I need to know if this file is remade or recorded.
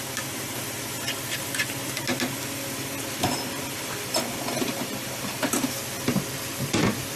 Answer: recorded